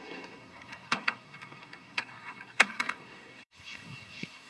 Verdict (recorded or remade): remade